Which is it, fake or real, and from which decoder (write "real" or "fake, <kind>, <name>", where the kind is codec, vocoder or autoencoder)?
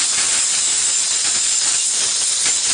real